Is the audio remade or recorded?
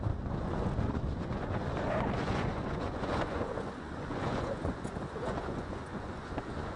remade